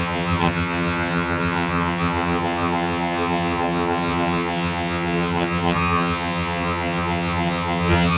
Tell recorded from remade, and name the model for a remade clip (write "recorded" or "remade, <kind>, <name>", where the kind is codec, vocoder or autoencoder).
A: remade, vocoder, HiFi-GAN